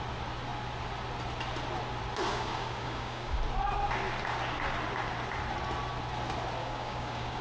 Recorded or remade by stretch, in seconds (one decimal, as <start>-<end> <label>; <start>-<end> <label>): 0.0-2.3 recorded; 2.3-3.4 remade; 3.4-6.6 recorded; 6.6-7.4 remade